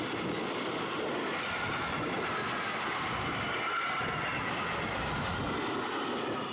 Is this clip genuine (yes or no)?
yes